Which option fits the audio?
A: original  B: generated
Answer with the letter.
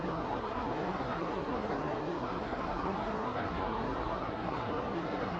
B